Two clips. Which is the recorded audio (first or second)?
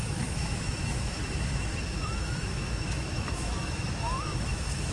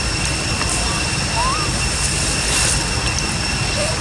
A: second